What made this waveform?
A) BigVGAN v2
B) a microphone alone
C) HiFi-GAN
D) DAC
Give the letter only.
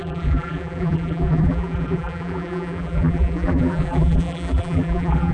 A